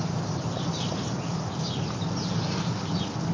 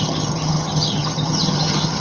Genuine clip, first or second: first